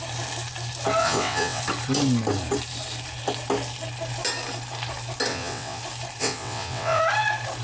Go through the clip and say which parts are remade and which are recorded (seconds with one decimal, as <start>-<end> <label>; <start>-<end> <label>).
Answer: 0.0-1.0 recorded; 1.0-1.6 remade; 1.6-5.3 recorded; 5.3-5.8 remade; 5.8-6.2 recorded; 6.2-7.0 remade; 7.0-7.6 recorded